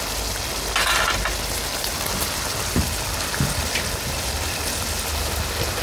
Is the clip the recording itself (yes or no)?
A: yes